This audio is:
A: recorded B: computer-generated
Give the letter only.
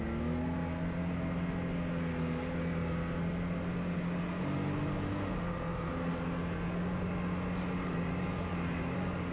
A